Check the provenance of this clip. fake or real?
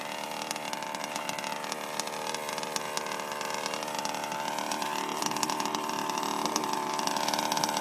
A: fake